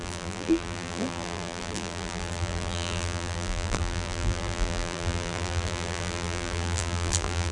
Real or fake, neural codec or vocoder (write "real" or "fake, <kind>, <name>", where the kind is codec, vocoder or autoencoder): fake, vocoder, BigVGAN v2